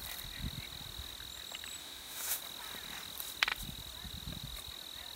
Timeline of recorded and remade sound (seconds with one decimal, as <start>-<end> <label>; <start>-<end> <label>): 0.0-1.8 recorded; 1.8-2.4 remade; 2.4-5.2 recorded